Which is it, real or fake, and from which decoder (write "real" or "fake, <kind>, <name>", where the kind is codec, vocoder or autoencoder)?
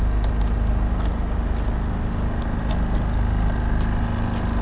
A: real